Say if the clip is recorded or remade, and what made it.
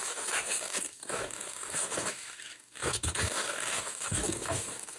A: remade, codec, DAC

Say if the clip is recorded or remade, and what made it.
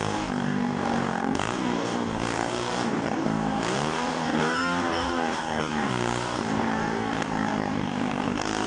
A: remade, codec, DAC